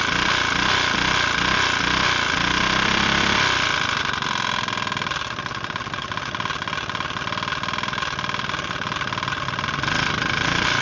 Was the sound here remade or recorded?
recorded